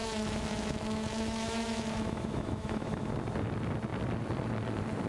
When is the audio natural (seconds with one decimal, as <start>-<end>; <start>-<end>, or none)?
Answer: 3.1-5.1